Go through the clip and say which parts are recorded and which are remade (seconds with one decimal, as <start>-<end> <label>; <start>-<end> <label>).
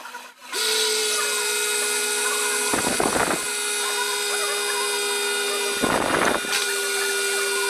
0.0-7.7 recorded